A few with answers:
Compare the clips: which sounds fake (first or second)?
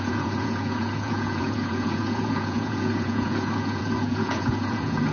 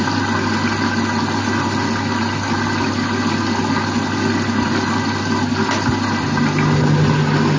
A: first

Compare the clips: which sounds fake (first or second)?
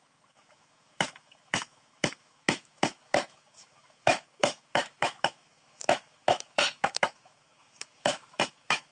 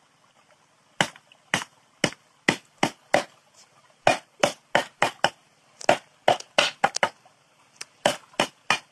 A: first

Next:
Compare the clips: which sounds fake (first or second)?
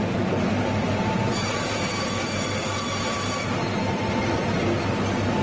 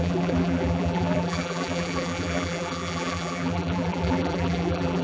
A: second